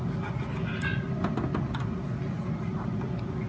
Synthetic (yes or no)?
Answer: no